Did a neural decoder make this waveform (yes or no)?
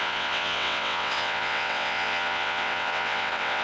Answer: yes